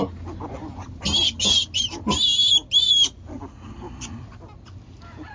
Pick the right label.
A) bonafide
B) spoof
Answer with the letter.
A